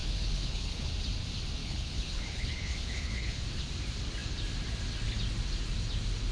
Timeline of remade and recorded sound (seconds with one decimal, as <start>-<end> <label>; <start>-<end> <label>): 0.0-0.9 remade; 0.9-1.6 recorded; 1.6-3.4 remade; 3.4-6.3 recorded